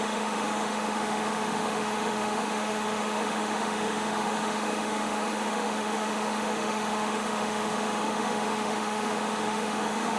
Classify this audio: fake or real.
fake